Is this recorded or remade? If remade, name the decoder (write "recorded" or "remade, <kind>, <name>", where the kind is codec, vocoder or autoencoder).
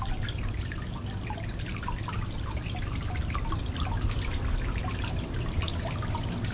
recorded